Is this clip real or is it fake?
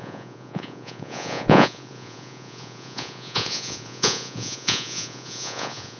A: fake